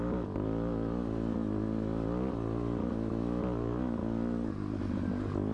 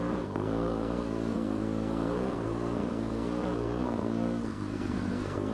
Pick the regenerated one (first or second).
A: second